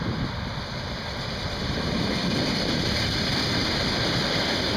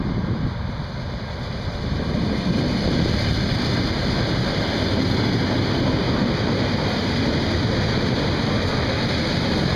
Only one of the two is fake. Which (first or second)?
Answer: first